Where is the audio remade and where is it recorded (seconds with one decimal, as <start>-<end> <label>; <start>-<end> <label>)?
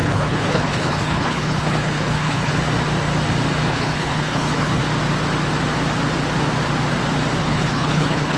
0.0-2.5 remade; 2.5-3.7 recorded; 3.7-4.8 remade; 4.8-7.4 recorded; 7.4-8.4 remade